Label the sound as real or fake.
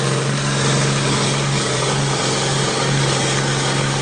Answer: fake